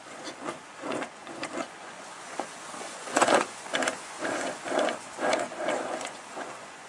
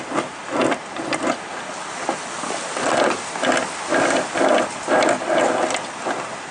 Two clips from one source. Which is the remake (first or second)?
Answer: first